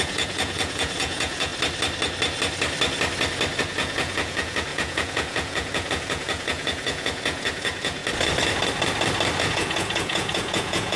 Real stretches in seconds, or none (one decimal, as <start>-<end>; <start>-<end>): 1.5-3.6; 8.0-9.4